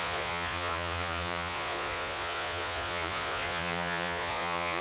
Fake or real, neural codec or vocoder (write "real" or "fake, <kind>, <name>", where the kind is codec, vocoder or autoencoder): fake, vocoder, Vocos